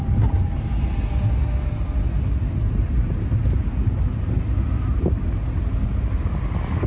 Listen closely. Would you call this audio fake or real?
real